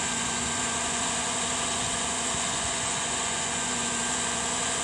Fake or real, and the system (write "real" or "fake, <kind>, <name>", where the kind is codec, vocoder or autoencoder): fake, vocoder, Vocos